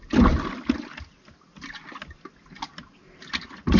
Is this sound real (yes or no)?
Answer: yes